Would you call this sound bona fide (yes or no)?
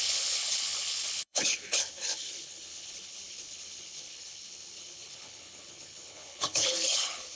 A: no